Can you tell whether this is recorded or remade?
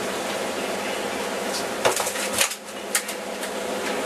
recorded